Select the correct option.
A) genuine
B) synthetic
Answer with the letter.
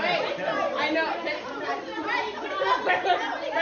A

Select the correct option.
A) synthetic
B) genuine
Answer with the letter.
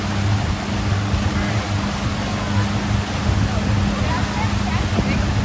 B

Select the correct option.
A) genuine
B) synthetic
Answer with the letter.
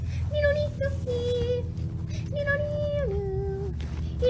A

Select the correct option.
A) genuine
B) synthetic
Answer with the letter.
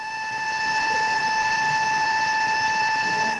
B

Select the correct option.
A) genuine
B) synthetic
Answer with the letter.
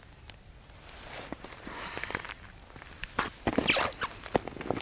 A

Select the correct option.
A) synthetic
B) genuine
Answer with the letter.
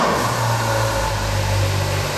B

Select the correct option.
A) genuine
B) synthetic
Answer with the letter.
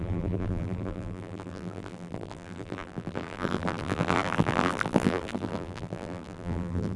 B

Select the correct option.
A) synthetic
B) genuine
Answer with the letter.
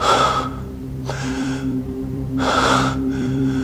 A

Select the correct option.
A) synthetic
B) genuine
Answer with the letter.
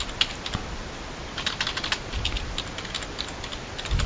B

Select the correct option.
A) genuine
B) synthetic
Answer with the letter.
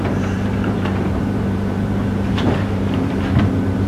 B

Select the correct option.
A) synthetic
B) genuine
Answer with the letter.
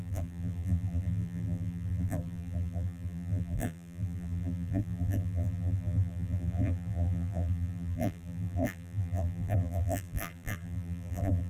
A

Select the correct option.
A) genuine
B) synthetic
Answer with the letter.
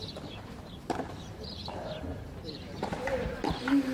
B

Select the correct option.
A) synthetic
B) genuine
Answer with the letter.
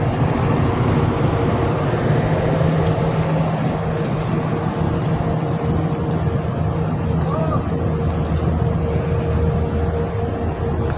B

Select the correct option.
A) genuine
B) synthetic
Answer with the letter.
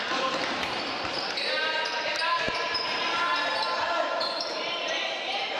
B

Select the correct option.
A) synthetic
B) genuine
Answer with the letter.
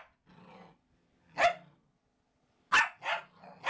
B